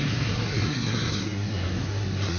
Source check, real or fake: fake